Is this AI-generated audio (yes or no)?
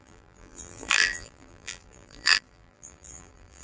yes